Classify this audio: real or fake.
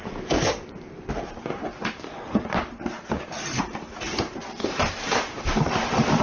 fake